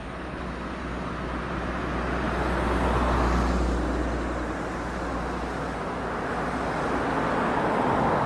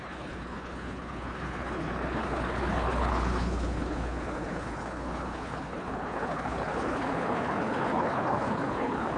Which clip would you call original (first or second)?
first